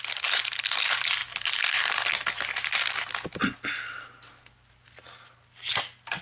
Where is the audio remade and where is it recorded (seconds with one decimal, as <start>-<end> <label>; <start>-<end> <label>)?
0.0-6.2 recorded